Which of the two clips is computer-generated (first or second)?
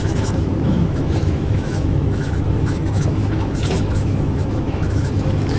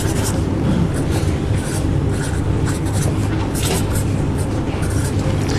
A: first